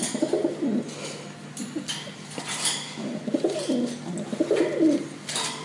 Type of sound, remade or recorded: recorded